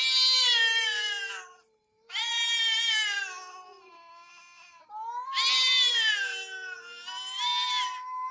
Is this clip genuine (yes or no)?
yes